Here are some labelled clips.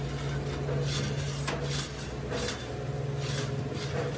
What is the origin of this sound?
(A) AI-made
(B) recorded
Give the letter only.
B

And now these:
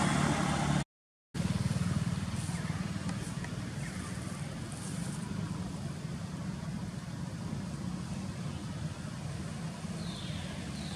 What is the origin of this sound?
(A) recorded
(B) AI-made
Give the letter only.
A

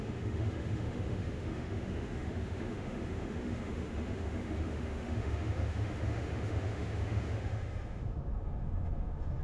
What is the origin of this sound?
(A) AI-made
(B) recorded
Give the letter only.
A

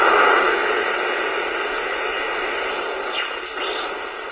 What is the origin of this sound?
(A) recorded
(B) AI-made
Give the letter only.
A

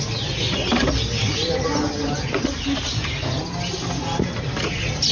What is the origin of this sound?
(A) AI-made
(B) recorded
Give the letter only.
B